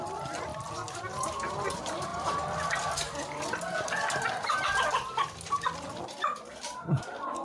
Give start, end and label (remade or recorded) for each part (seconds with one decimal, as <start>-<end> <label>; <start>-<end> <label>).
0.0-0.5 remade; 0.5-1.5 recorded; 1.5-2.1 remade; 2.1-6.5 recorded; 6.5-7.4 remade